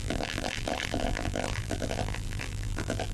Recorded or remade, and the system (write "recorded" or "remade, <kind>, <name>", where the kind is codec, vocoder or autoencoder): remade, vocoder, BigVGAN v2